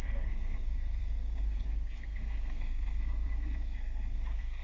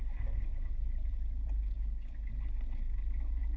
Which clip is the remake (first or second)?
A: first